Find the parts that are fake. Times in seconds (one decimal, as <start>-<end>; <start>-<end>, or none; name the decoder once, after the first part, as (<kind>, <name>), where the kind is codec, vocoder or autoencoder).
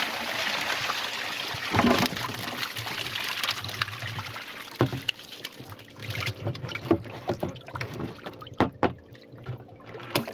4.9-5.6 (vocoder, BigVGAN v2)